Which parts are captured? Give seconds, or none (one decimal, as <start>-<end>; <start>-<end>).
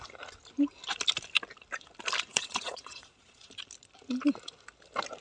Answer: 0.0-2.3; 3.5-5.2